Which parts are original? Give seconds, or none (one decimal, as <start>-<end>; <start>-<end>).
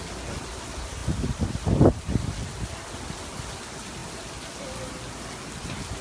0.0-6.0